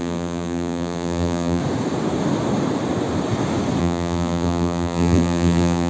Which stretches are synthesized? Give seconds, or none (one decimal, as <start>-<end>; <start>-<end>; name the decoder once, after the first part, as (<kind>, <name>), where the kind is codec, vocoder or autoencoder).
0.0-1.6 (vocoder, BigVGAN v2); 3.8-5.9